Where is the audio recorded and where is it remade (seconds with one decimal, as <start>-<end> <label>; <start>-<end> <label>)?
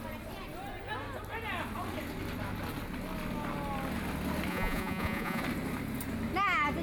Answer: 0.0-4.5 recorded; 4.5-5.4 remade; 5.4-6.8 recorded